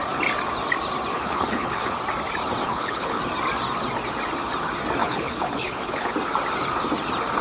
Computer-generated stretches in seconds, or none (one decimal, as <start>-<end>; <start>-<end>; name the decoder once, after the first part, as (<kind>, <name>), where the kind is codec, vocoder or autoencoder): 1.1-2.0 (codec, HILCodec); 2.6-3.2; 5.0-6.1